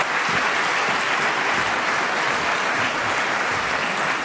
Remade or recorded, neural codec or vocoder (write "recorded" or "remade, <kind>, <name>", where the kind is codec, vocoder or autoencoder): recorded